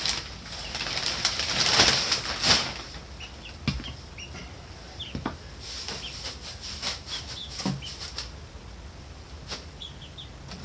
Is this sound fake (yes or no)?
no